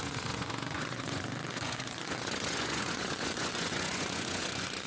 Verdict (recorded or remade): remade